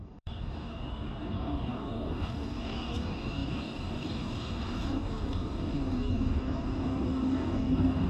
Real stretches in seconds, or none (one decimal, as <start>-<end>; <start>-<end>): none